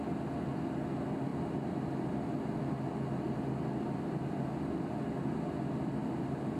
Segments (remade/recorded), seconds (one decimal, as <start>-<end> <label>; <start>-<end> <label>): 0.0-6.0 recorded; 6.0-6.6 remade